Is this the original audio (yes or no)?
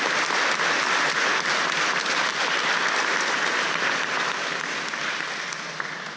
yes